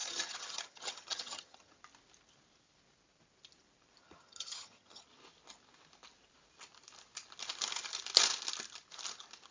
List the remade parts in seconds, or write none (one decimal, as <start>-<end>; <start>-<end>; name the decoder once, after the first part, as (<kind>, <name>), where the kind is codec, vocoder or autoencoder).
0.0-1.8 (vocoder, HiFi-GAN); 4.0-5.0